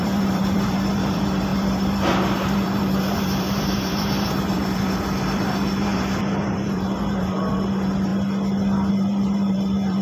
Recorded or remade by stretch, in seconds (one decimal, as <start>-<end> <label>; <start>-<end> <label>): 0.0-8.1 remade; 8.1-8.9 recorded; 8.9-10.0 remade